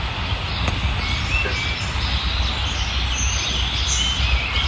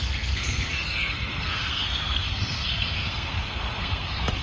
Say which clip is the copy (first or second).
second